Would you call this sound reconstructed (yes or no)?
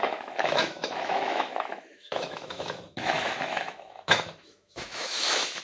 yes